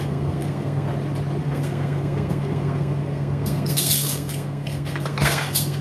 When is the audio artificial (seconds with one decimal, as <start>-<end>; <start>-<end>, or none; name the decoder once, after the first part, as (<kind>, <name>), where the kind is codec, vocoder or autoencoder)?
0.0-0.9 (codec, SNAC); 1.4-5.8